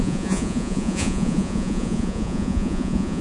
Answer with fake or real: fake